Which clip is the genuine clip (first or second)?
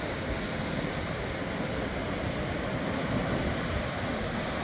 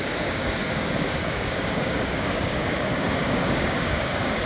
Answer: first